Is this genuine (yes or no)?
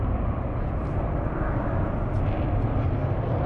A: yes